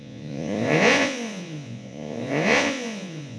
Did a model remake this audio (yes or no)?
yes